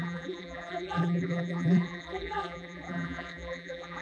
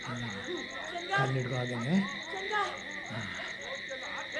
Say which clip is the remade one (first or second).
first